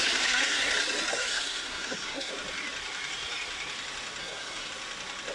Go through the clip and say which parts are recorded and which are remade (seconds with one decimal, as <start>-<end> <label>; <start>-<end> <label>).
0.0-0.7 remade; 0.7-1.1 recorded; 1.1-2.3 remade; 2.3-4.2 recorded; 4.2-4.7 remade; 4.7-5.3 recorded